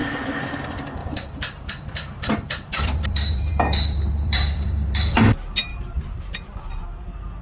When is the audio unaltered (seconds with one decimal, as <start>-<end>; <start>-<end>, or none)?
0.6-1.0; 5.2-5.7; 6.8-7.4